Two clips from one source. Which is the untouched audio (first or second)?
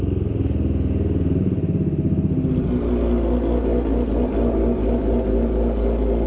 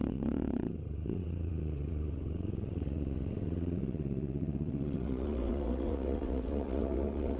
first